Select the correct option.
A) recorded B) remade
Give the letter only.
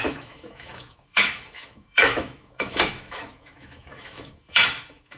B